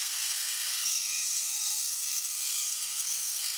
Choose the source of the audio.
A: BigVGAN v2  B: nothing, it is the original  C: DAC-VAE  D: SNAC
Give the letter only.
D